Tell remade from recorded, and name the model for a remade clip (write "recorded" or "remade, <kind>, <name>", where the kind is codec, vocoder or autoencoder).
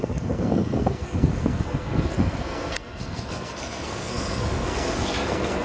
remade, codec, SNAC